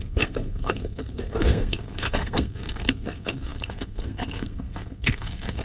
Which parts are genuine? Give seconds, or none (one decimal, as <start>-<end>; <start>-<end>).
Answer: none